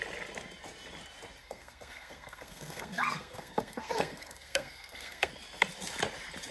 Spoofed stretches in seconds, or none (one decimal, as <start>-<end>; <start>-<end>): 1.4-5.3